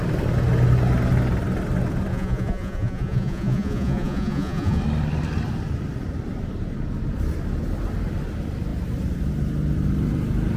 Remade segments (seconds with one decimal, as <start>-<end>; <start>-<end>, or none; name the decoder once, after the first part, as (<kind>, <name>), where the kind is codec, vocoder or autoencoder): 2.1-4.8 (vocoder, Vocos)